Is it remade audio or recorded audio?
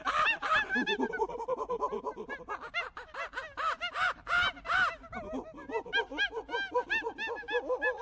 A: recorded